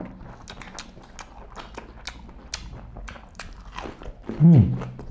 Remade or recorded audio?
recorded